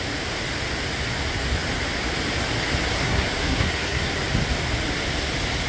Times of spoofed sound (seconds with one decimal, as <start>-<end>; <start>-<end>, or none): 2.9-4.1